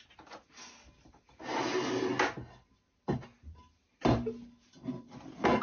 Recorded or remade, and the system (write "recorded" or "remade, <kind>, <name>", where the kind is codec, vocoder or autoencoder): recorded